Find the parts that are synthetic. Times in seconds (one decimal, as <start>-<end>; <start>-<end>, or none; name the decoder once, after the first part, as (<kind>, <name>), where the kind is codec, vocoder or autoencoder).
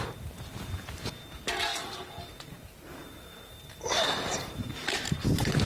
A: 1.7-2.2 (vocoder, BigVGAN v2); 2.9-4.9